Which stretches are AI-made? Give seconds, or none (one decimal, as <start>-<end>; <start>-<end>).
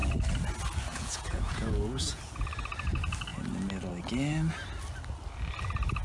0.9-2.2